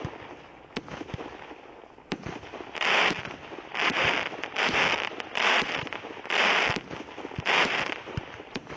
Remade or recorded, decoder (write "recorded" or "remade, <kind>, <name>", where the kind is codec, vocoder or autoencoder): recorded